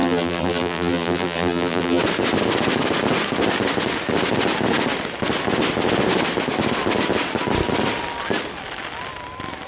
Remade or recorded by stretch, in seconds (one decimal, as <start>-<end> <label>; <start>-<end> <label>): 0.0-2.0 remade; 2.0-9.7 recorded